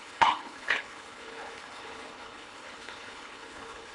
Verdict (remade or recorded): remade